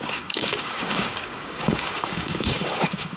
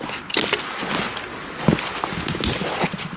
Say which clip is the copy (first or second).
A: first